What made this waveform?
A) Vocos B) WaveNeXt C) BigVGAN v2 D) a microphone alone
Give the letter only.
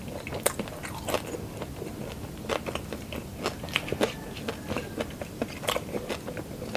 D